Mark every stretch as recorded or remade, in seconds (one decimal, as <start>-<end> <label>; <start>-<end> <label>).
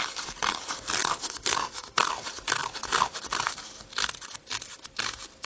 0.0-1.0 recorded; 1.0-2.1 remade; 2.1-5.4 recorded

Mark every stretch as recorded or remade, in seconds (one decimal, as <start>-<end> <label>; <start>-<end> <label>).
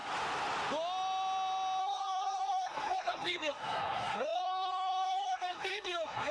0.0-1.8 recorded; 1.8-6.3 remade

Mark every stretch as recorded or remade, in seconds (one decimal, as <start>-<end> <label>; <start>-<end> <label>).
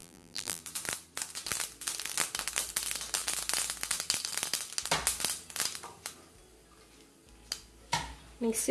0.0-0.6 remade; 0.6-8.7 recorded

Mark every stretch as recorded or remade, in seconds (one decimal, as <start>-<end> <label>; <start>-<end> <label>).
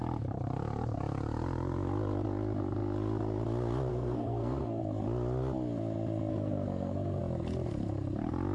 0.0-3.9 recorded; 3.9-4.8 remade; 4.8-6.3 recorded; 6.3-7.2 remade; 7.2-8.5 recorded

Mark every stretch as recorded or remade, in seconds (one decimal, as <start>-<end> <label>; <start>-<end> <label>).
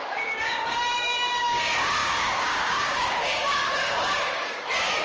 0.0-5.0 remade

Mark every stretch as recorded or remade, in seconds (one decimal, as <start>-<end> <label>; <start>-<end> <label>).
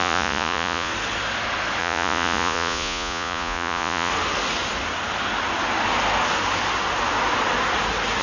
0.0-0.9 remade; 0.9-1.8 recorded; 1.8-4.1 remade; 4.1-8.2 recorded